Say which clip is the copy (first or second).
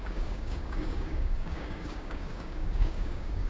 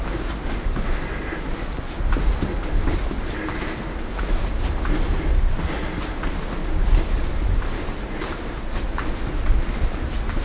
first